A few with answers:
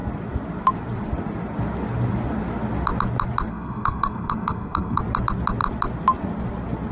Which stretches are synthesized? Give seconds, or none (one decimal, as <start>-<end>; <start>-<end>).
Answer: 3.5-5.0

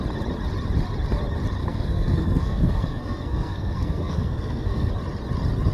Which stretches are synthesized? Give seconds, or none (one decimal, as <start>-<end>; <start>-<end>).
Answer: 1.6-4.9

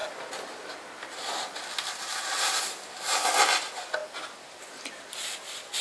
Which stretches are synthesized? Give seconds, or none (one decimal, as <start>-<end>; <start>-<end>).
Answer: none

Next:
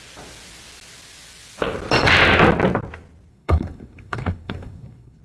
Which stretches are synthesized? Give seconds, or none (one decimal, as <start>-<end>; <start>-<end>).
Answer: 3.3-5.2

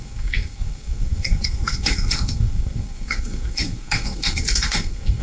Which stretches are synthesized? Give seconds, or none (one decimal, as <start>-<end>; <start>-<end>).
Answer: 0.0-5.2

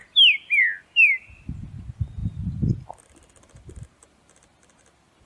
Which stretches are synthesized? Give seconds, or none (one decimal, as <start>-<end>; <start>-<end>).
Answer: none

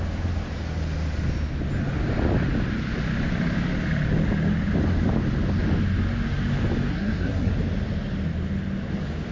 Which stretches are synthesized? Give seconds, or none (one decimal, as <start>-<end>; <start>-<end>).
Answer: 6.9-7.5

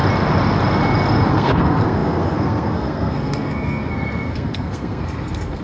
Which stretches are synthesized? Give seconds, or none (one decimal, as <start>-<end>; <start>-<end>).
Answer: 1.3-5.6